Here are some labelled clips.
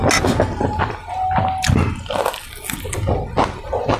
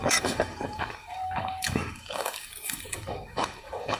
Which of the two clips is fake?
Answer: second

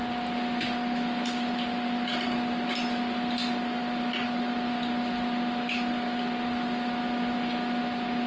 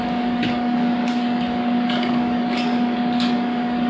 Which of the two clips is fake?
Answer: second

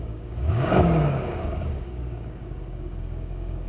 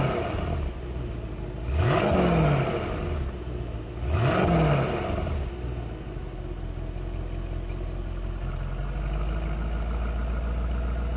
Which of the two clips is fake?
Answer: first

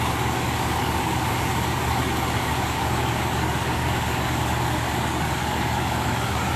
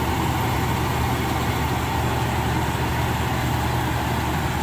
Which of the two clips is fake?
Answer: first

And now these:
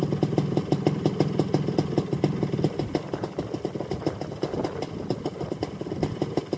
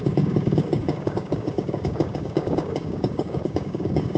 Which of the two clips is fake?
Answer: second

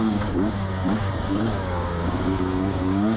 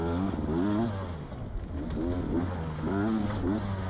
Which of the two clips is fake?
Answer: first